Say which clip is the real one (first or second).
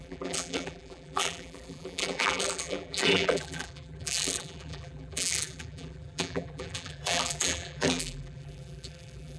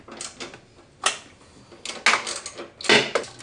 second